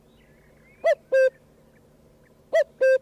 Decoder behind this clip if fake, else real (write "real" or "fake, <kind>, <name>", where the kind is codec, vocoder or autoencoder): real